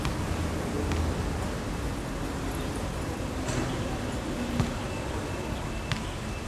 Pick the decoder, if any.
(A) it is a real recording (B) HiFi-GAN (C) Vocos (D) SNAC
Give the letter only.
A